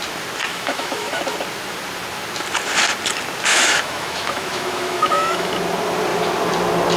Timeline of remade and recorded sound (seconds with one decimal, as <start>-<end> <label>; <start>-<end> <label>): 0.0-0.5 recorded; 0.5-1.2 remade; 1.2-3.5 recorded; 3.5-5.5 remade; 5.5-7.0 recorded